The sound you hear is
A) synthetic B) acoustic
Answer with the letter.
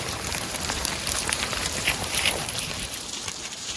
A